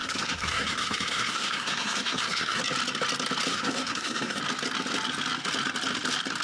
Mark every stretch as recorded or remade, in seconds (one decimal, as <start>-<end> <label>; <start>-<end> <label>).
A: 0.0-2.6 remade; 2.6-3.5 recorded; 3.5-4.4 remade; 4.4-6.4 recorded